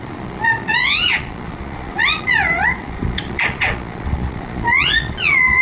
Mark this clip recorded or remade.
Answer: remade